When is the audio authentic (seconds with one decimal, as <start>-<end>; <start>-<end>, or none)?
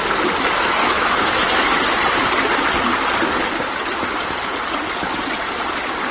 0.0-0.8; 1.8-6.1